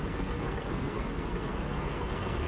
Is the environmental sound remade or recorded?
remade